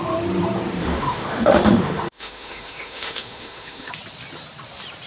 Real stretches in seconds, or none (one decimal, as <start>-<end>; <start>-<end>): 0.0-0.8; 3.9-5.1